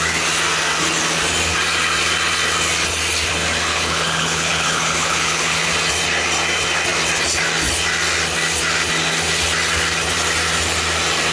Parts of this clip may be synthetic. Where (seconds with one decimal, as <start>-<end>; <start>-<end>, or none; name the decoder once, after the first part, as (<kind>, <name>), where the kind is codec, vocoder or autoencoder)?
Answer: 3.7-5.7 (codec, HILCodec)